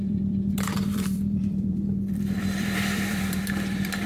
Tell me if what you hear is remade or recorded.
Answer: remade